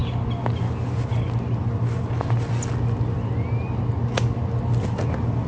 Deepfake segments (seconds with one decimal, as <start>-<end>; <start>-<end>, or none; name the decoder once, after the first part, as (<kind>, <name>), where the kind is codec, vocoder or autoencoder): none